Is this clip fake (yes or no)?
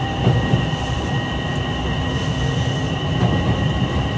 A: no